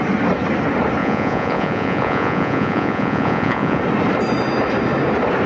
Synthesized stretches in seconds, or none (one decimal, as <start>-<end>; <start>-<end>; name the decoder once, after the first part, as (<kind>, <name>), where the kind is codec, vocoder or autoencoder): 1.0-3.8 (vocoder, Vocos)